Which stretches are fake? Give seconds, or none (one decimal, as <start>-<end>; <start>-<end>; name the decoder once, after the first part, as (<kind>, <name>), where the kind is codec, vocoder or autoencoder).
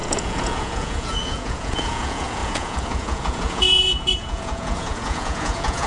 0.0-5.9 (vocoder, Vocos)